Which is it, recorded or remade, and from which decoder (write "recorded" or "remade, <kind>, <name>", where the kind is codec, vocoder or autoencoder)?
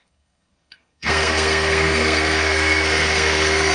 remade, codec, SNAC